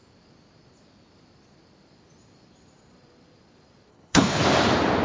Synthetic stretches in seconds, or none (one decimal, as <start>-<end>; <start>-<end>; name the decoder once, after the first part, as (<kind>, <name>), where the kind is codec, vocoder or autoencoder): 3.9-4.4 (codec, HILCodec)